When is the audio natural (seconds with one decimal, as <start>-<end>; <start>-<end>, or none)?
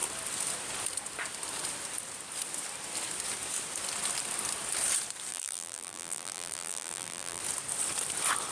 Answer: 0.0-5.3; 7.4-8.5